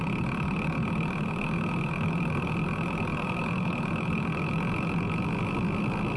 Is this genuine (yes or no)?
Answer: yes